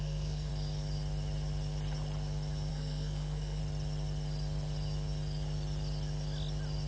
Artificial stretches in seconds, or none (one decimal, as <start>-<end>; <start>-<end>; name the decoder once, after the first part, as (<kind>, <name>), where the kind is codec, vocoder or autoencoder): 0.0-0.5 (codec, SNAC); 2.7-3.6